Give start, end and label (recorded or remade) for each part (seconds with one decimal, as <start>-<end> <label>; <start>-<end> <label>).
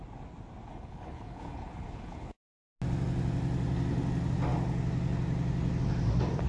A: 0.0-0.7 recorded; 0.7-2.4 remade; 2.4-6.5 recorded